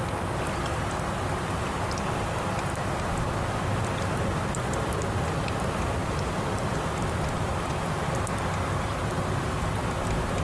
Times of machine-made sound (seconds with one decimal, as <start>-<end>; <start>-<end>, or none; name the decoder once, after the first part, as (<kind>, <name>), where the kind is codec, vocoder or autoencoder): none